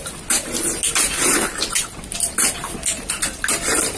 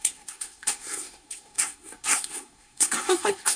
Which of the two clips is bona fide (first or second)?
first